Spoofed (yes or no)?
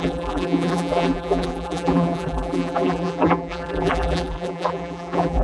yes